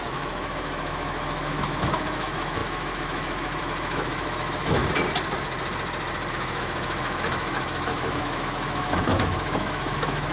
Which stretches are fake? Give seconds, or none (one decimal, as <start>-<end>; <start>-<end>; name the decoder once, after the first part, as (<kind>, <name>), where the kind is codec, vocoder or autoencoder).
0.0-4.8 (autoencoder, DAC-VAE); 6.3-10.3